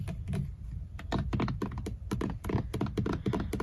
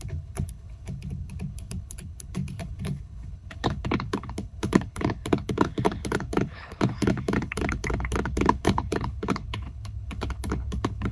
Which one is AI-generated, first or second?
second